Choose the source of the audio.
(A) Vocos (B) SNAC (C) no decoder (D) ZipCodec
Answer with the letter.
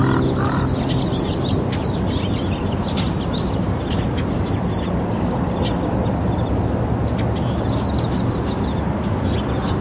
C